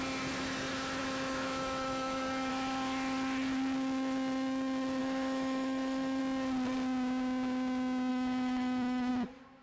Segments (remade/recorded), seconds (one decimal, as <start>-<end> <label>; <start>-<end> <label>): 0.0-1.0 recorded; 1.0-2.5 remade; 2.5-5.0 recorded; 5.0-6.2 remade; 6.2-8.1 recorded; 8.1-9.1 remade; 9.1-9.6 recorded